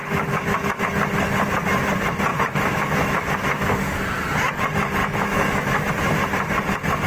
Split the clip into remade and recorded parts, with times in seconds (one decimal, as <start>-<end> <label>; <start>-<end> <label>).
0.0-0.8 remade; 0.8-2.3 recorded; 2.3-4.0 remade; 4.0-5.0 recorded; 5.0-5.9 remade; 5.9-7.1 recorded

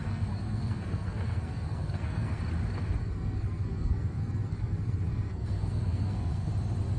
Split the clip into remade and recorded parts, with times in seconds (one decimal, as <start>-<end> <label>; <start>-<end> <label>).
0.0-2.4 remade; 2.4-3.0 recorded; 3.0-6.5 remade; 6.5-7.0 recorded

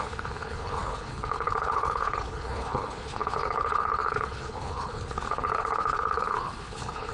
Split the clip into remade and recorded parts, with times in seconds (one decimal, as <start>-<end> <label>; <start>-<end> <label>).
0.0-7.1 remade

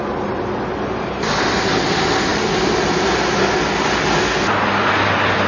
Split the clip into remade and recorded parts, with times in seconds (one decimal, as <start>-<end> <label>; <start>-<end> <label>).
0.0-5.5 recorded

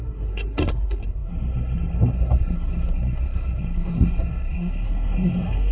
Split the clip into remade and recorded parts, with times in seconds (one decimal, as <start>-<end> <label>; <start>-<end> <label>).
0.0-5.7 remade

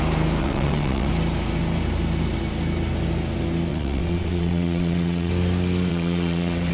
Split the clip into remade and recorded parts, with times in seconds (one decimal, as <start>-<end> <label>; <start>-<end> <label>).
0.0-0.4 recorded; 0.4-1.1 remade; 1.1-3.7 recorded; 3.7-5.3 remade; 5.3-5.9 recorded; 5.9-6.7 remade